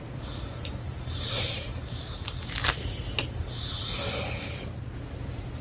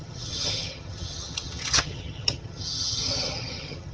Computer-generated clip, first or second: second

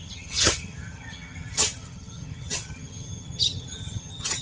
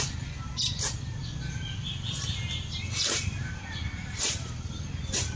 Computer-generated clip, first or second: first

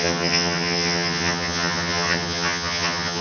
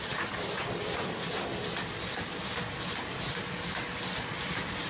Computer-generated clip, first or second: first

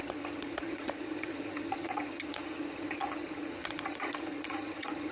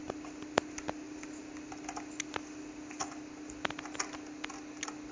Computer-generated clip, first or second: first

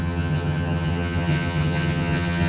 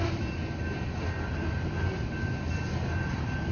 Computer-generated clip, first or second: first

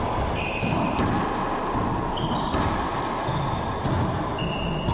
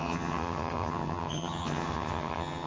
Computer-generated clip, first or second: second